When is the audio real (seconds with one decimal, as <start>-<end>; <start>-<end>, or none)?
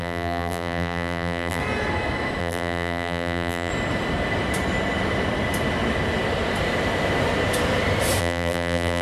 1.6-2.4; 3.7-8.2